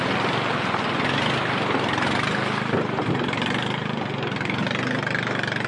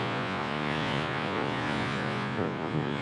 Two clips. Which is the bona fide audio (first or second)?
first